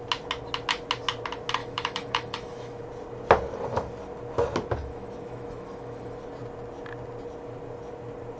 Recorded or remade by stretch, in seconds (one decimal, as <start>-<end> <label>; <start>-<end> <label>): 0.0-1.6 recorded; 1.6-2.8 remade; 2.8-4.8 recorded; 4.8-6.2 remade; 6.2-8.4 recorded

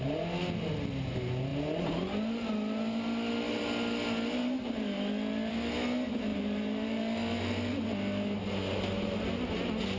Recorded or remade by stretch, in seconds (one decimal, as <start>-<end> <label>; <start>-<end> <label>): 0.0-6.3 recorded; 6.3-7.0 remade; 7.0-10.0 recorded